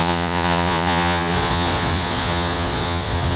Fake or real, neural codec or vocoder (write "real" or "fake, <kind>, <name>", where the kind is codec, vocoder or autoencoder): fake, vocoder, Vocos